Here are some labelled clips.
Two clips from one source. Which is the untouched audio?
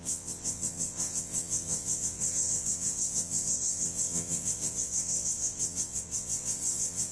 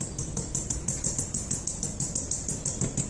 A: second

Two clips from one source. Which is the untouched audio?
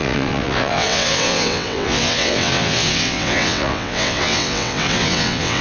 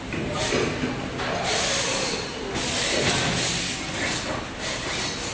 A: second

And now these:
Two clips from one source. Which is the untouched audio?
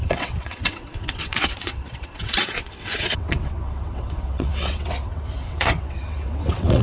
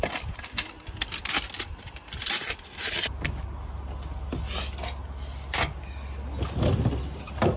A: second